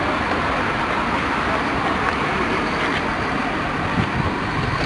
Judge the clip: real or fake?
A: real